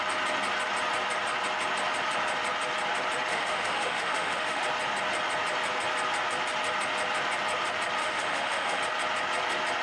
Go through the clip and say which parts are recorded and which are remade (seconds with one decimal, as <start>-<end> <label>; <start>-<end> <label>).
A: 0.0-3.3 recorded; 3.3-4.6 remade; 4.6-8.0 recorded; 8.0-8.8 remade; 8.8-9.8 recorded